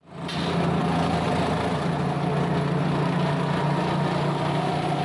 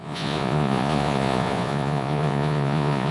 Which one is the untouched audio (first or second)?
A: first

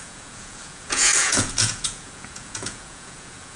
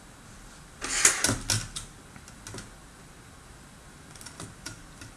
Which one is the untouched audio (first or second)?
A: second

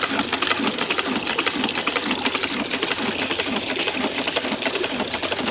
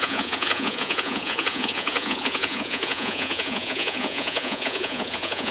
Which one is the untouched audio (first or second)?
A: first